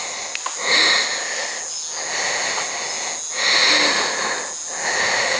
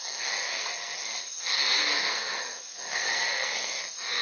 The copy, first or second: second